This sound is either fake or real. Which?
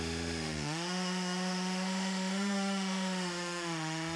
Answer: fake